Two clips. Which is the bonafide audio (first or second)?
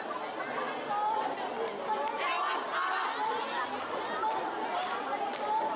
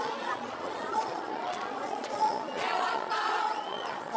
first